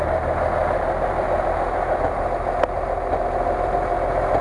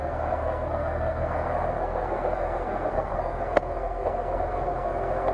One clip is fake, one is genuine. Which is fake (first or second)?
second